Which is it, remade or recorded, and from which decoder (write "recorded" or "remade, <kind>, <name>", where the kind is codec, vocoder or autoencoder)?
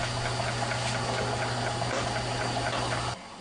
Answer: recorded